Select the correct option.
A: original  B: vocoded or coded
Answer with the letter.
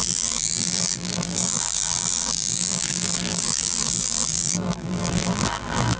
B